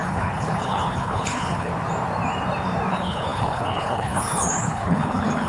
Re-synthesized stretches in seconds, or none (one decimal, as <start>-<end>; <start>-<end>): 0.0-1.7; 2.9-5.5